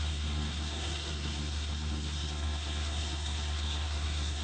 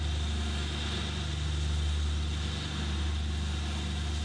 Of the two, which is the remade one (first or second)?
first